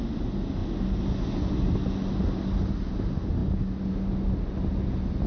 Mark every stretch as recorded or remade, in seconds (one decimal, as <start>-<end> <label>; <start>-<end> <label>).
0.0-5.3 recorded